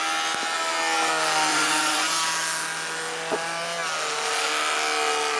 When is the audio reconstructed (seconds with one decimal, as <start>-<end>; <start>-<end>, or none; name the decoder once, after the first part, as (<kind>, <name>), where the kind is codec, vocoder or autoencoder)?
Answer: 1.5-2.2 (vocoder, Vocos)